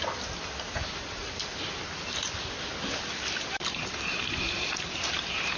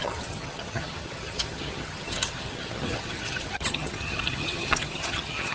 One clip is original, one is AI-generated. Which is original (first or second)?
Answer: first